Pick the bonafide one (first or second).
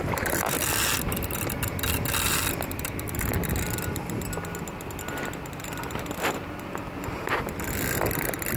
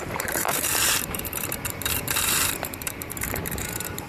first